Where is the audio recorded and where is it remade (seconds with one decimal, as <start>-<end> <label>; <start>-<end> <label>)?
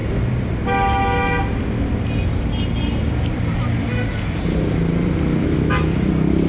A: 0.0-5.4 recorded; 5.4-6.1 remade; 6.1-6.5 recorded